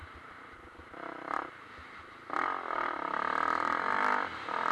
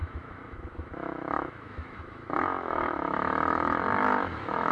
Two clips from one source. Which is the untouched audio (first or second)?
first